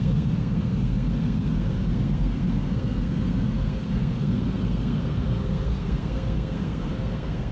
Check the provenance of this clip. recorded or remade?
remade